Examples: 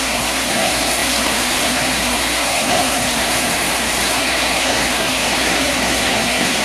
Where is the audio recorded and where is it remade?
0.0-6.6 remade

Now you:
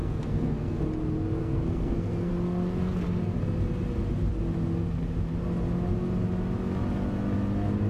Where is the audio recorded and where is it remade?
0.0-0.8 remade; 0.8-1.4 recorded; 1.4-2.3 remade; 2.3-7.9 recorded

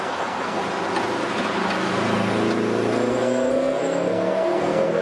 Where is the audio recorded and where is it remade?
0.0-0.6 remade; 0.6-3.1 recorded; 3.1-5.0 remade

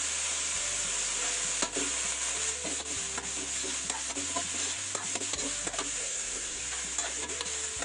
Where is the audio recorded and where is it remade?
0.0-6.0 recorded; 6.0-6.6 remade; 6.6-7.8 recorded

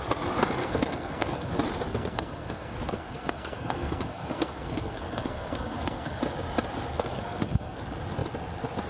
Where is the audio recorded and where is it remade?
0.0-0.6 recorded; 0.6-1.5 remade; 1.5-1.9 recorded; 1.9-6.2 remade; 6.2-6.9 recorded; 6.9-7.8 remade; 7.8-8.9 recorded